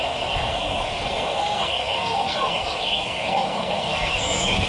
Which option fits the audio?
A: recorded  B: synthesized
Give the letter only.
B